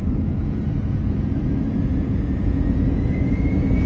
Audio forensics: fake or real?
fake